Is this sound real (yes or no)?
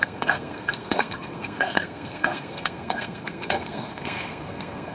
no